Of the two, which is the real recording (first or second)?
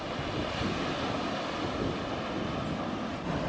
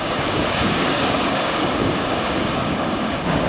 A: first